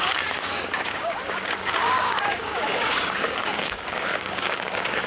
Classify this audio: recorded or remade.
remade